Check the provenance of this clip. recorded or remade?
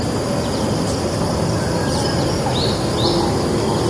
recorded